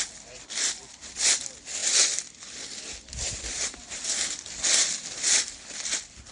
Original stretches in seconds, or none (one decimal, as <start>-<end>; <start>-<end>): 0.0-6.3